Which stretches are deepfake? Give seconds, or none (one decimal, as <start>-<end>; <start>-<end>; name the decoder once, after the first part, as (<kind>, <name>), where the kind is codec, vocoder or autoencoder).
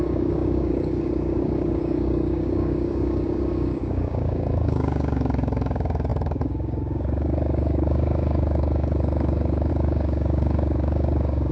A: 0.0-11.5 (codec, DAC)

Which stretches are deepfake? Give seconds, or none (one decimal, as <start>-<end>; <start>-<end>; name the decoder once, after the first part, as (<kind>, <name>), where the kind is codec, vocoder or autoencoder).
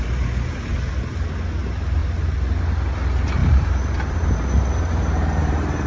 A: 3.4-5.9 (vocoder, BigVGAN v2)